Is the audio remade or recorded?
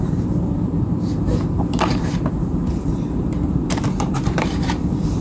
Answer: remade